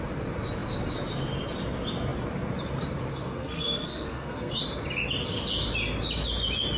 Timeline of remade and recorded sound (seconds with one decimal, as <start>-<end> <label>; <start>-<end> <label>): 0.0-3.1 recorded; 3.1-4.6 remade; 4.6-6.8 recorded